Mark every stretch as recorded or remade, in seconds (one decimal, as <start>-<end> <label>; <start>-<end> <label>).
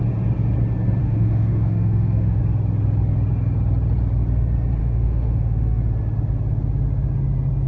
0.0-1.0 recorded; 1.0-2.4 remade; 2.4-4.8 recorded; 4.8-5.8 remade; 5.8-7.7 recorded